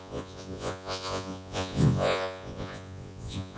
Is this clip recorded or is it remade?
remade